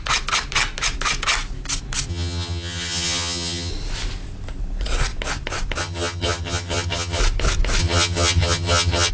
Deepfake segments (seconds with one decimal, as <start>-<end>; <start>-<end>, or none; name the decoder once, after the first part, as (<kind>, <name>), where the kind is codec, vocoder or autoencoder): 2.1-3.7 (vocoder, HiFi-GAN); 5.8-7.2; 7.8-9.1